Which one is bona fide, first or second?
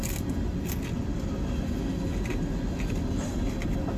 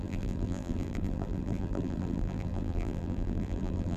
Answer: first